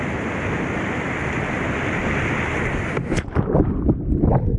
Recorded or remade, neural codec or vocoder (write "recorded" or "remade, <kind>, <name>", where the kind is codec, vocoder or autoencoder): recorded